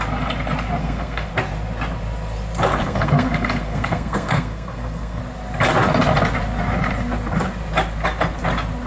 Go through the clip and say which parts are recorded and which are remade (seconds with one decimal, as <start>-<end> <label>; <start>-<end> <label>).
0.0-0.8 recorded; 0.8-1.3 remade; 1.3-2.8 recorded; 2.8-5.2 remade; 5.2-8.9 recorded